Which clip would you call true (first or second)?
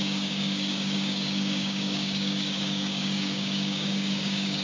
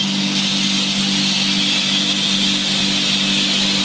second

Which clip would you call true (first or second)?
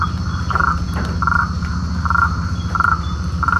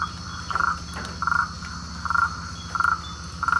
second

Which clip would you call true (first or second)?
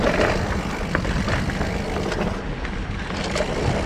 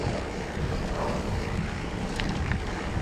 first